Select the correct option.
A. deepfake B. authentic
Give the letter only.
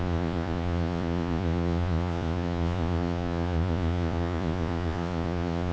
A